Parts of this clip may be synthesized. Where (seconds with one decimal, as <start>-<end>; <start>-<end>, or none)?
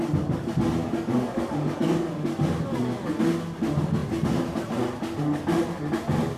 0.8-2.1; 2.7-3.2